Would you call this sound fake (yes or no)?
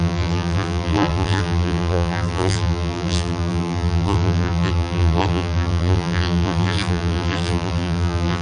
yes